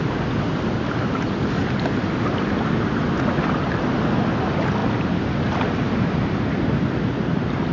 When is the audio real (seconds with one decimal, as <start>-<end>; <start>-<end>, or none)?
0.0-7.7